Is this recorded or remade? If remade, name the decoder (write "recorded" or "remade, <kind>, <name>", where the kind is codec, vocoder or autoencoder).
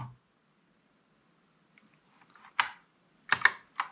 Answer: recorded